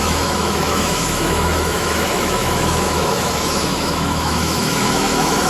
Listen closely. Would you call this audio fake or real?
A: fake